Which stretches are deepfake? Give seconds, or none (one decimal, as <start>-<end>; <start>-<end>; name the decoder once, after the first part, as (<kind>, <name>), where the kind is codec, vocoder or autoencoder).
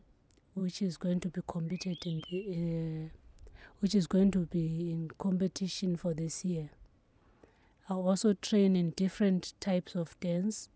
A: 0.6-2.2 (vocoder, Vocos); 7.3-10.8